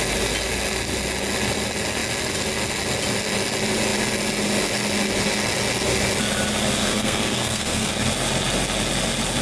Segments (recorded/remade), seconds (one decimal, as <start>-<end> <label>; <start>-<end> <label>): 0.0-6.8 recorded; 6.8-7.9 remade; 7.9-9.4 recorded